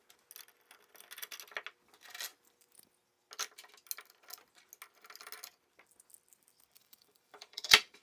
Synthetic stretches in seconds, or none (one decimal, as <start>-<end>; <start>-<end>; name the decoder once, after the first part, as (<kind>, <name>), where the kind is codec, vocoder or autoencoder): 6.8-8.0 (vocoder, BigVGAN v2)